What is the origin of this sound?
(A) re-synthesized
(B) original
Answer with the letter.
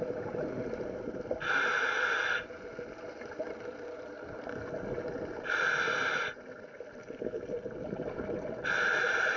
B